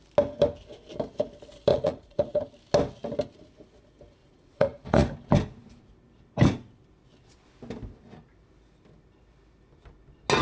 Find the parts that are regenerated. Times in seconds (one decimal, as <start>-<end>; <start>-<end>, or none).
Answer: 1.7-2.5; 4.2-5.1